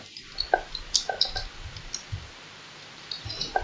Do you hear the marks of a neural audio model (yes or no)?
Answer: no